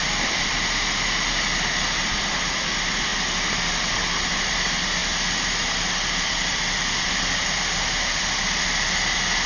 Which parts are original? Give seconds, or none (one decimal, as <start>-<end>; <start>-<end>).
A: none